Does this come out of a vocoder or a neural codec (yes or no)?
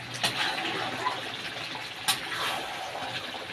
no